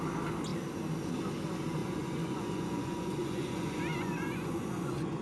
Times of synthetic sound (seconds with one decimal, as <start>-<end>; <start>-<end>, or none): 1.8-5.2